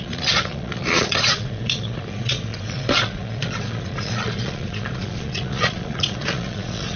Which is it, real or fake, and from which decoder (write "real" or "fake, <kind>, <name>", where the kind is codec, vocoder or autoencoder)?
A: fake, vocoder, Vocos